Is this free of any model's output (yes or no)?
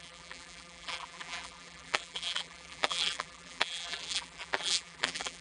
no